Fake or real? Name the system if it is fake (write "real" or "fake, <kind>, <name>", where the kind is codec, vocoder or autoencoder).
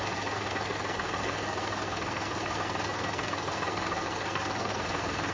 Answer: fake, codec, SNAC